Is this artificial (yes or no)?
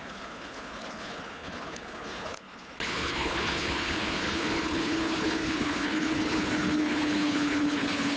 yes